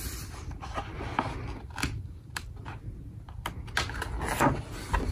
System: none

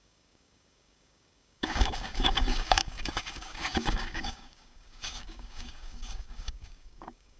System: codec, DAC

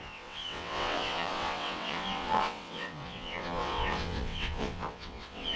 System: vocoder, WaveNeXt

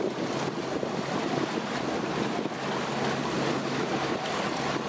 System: none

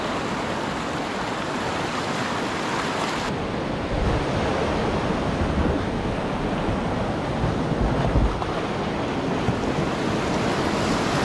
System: none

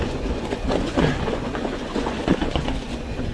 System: vocoder, Vocos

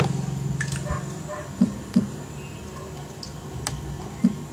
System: none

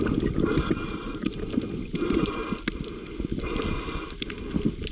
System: none